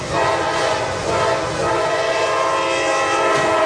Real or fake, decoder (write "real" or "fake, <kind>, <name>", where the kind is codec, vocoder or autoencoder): fake, vocoder, Vocos